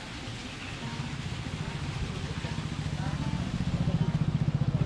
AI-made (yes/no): no